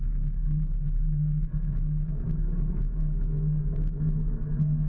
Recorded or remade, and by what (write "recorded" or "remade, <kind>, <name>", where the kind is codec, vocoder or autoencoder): remade, codec, SNAC